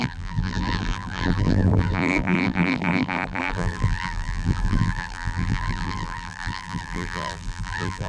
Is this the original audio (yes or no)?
no